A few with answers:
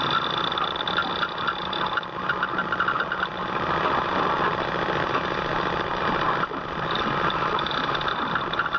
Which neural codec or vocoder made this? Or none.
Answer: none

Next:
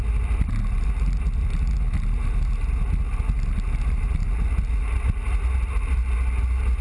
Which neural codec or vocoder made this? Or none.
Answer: none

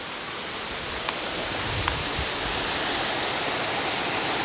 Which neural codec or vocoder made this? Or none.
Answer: none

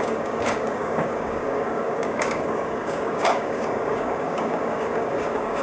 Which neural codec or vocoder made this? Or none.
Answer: codec, DAC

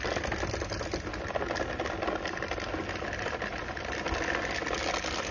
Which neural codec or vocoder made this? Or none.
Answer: none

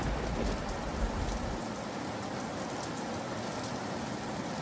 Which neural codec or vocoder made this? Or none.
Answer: none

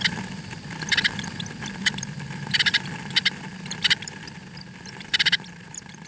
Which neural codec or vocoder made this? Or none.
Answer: vocoder, BigVGAN v2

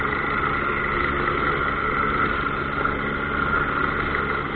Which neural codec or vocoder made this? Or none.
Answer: none